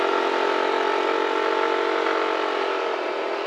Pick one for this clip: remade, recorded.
recorded